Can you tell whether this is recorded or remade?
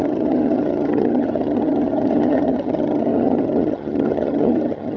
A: remade